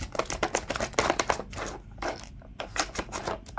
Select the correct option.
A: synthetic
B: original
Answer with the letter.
B